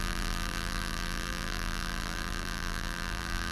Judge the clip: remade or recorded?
remade